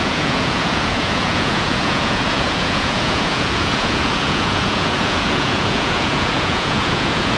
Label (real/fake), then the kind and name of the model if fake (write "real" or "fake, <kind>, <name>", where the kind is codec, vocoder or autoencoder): fake, vocoder, Vocos